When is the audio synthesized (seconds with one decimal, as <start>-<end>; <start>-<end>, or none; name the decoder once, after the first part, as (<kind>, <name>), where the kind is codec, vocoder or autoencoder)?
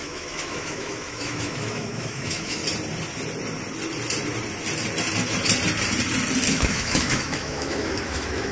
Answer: 0.0-2.6 (autoencoder, DAC-VAE); 6.5-8.5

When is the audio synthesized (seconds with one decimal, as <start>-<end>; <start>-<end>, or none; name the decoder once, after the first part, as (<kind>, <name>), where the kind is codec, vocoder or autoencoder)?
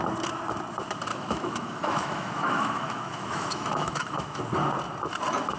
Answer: 1.1-4.4 (autoencoder, DAC-VAE)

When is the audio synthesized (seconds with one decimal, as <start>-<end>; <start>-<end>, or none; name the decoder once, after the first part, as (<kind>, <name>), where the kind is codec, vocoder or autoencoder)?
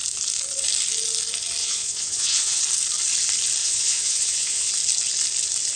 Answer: 1.6-2.6 (vocoder, Vocos); 3.6-4.7